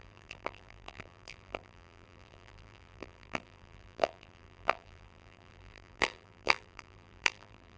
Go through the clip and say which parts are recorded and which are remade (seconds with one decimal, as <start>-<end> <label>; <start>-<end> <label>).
0.0-7.8 remade